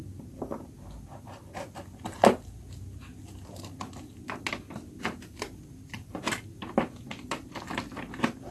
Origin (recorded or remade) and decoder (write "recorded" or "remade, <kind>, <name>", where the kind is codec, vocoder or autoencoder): recorded